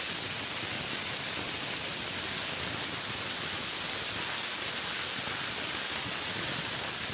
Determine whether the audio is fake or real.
real